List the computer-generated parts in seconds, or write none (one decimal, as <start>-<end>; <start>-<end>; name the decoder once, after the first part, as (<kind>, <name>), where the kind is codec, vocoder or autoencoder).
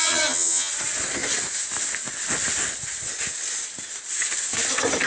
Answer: 0.0-0.7 (vocoder, HiFi-GAN)